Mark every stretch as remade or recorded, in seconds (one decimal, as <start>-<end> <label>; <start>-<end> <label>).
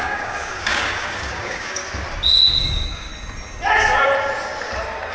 0.0-1.8 remade; 1.8-2.6 recorded; 2.6-3.1 remade; 3.1-5.1 recorded